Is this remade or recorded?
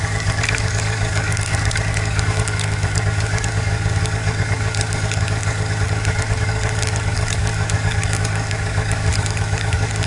remade